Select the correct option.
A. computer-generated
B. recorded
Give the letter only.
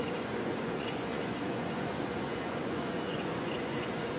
A